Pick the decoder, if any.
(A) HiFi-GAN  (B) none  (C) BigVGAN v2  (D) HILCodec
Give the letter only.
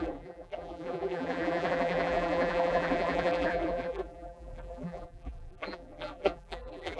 C